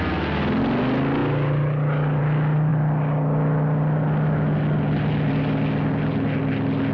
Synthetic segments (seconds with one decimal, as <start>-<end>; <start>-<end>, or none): none